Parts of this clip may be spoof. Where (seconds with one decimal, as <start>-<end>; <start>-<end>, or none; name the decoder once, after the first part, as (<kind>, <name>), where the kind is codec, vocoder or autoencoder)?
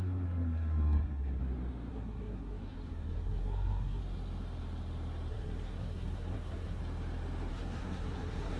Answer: 0.0-1.4 (codec, SNAC); 1.9-4.0; 5.3-6.8; 7.5-8.6